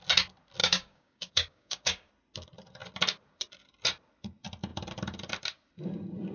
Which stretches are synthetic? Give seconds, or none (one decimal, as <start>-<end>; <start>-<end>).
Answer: 0.6-2.1